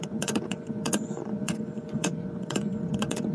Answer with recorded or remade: remade